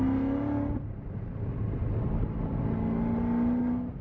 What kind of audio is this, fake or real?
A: real